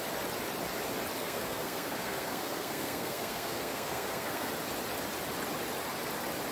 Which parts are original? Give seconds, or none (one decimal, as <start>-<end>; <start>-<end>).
0.0-1.2; 4.5-6.5